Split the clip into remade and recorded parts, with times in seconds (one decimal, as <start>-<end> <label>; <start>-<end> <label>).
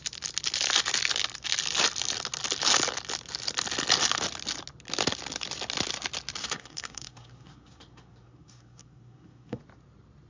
0.0-6.4 recorded; 6.4-9.6 remade; 9.6-10.3 recorded